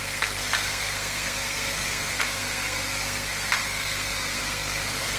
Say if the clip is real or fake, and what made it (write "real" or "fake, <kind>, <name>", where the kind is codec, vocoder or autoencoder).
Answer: fake, codec, SNAC